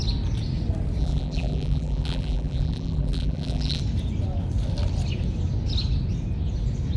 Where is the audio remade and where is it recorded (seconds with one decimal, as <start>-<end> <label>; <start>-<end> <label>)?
0.0-1.0 recorded; 1.0-3.8 remade; 3.8-7.0 recorded